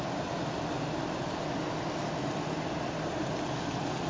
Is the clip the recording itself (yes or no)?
yes